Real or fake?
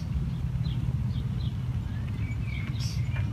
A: real